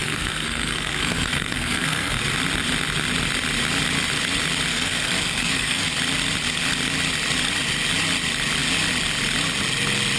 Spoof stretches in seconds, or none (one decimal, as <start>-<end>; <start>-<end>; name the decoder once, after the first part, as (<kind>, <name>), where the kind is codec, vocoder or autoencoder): 0.0-2.2 (codec, SNAC); 4.7-5.9